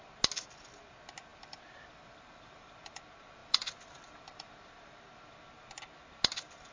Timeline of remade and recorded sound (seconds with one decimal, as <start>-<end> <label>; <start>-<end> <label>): 0.0-1.3 recorded; 1.3-3.0 remade; 3.0-3.4 recorded; 3.4-5.0 remade; 5.0-6.7 recorded